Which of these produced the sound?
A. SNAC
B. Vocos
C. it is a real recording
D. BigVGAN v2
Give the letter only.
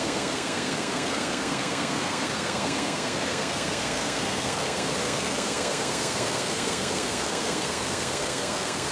A